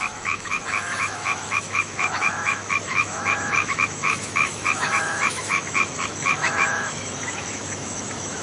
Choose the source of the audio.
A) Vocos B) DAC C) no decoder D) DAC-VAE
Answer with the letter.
D